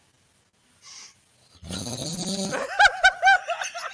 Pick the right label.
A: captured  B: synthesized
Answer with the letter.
A